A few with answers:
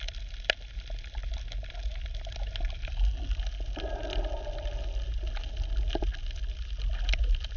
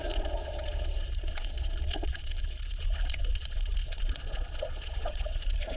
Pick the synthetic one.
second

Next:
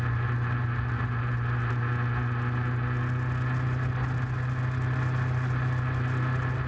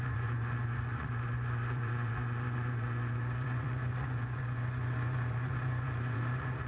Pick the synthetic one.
second